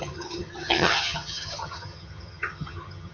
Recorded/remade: remade